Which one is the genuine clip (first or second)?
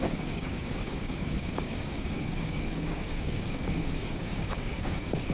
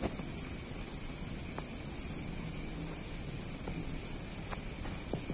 second